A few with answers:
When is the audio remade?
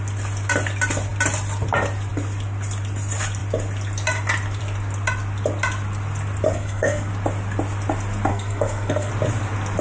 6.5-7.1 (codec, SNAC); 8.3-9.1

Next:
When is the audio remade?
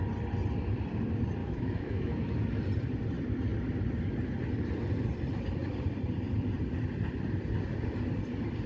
1.4-2.6 (autoencoder, DAC-VAE)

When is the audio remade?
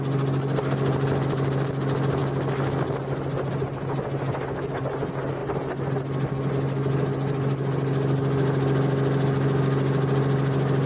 none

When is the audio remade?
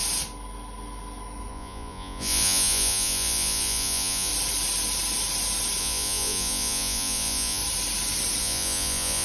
1.5-4.3 (vocoder, Vocos); 5.8-7.6; 8.4-9.2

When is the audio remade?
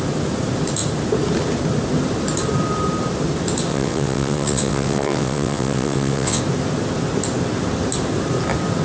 3.7-6.4 (vocoder, WaveNeXt)